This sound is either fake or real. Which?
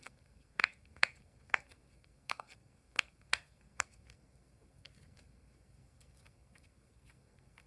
fake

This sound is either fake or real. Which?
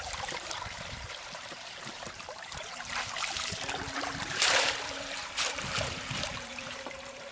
fake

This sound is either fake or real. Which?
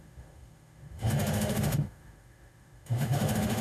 fake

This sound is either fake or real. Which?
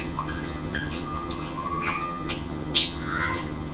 fake